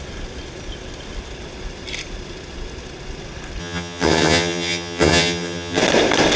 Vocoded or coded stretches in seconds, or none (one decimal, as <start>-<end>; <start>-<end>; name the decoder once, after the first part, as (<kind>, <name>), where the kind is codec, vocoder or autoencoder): 3.6-5.8 (vocoder, HiFi-GAN)